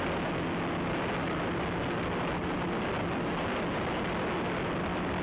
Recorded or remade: recorded